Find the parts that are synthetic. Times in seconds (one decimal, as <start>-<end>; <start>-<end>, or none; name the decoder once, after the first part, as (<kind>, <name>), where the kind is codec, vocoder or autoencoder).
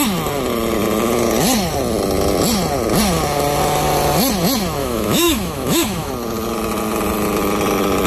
4.8-6.1 (autoencoder, DAC-VAE)